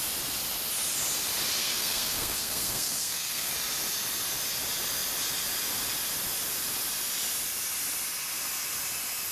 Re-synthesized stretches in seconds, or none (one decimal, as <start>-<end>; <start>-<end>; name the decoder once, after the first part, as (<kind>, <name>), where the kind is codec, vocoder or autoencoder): 1.6-3.5 (codec, SNAC)

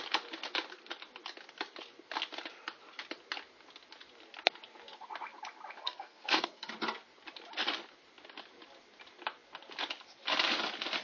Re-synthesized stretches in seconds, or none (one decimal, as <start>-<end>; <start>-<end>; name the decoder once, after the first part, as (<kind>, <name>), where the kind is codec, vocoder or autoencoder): 5.8-6.7 (codec, SNAC)

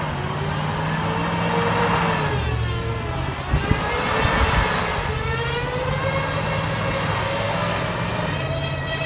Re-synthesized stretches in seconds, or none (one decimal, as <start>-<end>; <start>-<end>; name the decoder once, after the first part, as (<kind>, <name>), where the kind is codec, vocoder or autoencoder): 7.2-7.8 (codec, SNAC)

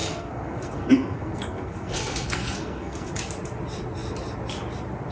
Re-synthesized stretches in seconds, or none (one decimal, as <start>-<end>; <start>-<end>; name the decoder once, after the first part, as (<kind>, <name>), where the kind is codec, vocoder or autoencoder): 0.0-3.1 (codec, SNAC)